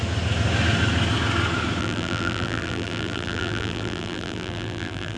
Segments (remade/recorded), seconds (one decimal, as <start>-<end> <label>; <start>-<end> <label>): 0.0-1.8 recorded; 1.8-5.2 remade